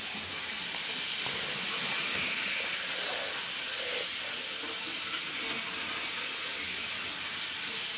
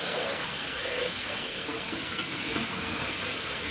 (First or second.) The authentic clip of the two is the first